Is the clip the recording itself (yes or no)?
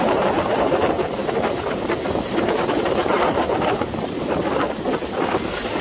no